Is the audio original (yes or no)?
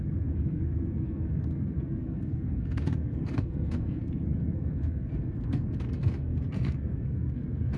no